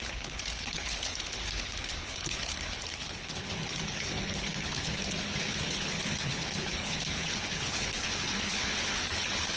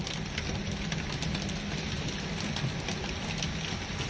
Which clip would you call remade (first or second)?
first